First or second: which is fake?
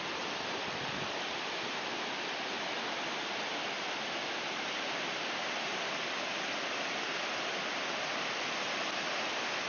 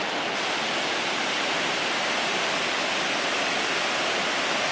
first